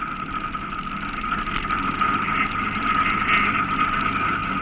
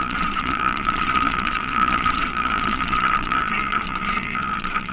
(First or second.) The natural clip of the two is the first